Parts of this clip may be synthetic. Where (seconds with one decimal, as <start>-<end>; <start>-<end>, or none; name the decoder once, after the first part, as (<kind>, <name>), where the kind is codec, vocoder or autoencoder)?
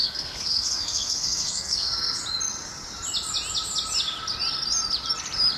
0.0-2.2 (codec, SNAC)